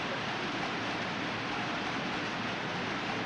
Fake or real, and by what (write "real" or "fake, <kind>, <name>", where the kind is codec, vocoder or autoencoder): real